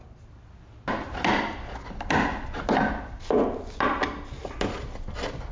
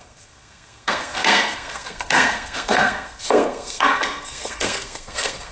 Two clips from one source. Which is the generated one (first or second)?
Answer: second